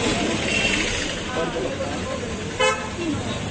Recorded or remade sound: remade